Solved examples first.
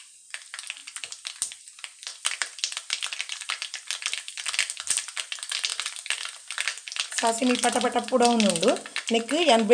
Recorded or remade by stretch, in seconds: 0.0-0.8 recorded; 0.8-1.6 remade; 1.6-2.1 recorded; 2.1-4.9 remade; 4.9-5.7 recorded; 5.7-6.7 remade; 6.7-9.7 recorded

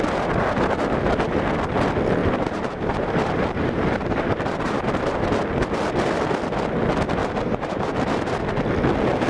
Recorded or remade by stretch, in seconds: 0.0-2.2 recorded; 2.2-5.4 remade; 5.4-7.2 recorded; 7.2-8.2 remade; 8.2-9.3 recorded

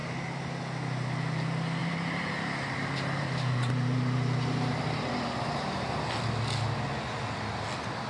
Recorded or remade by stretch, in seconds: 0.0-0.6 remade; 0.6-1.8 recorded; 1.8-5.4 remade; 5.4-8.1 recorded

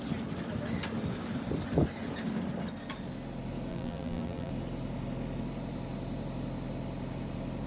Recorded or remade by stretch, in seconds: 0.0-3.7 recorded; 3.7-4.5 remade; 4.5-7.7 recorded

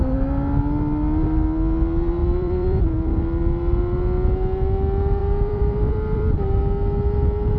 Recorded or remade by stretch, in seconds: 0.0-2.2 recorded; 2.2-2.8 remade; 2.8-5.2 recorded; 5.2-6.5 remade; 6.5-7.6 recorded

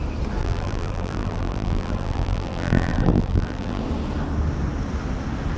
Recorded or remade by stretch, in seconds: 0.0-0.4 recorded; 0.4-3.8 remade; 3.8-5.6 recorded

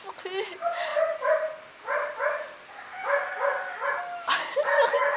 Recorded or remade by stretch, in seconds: 0.0-5.2 recorded

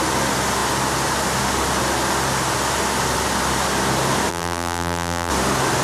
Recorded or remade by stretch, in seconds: 0.0-4.3 recorded; 4.3-5.3 remade; 5.3-5.8 recorded